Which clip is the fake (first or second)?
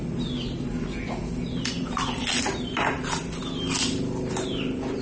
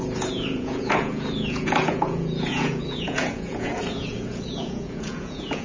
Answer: second